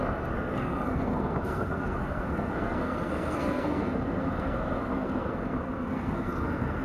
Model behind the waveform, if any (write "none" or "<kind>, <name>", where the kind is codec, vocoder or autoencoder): codec, SNAC